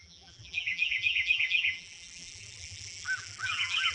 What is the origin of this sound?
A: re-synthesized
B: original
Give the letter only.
A